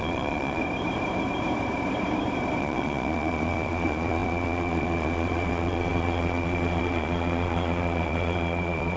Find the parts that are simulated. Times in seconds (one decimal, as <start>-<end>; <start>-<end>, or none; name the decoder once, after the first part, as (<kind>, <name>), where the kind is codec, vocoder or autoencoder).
0.0-0.6 (vocoder, Vocos); 2.6-9.0